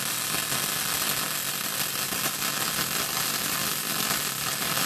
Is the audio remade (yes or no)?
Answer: no